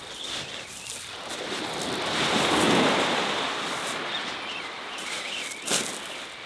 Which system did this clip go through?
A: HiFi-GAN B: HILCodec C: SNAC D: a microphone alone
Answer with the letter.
D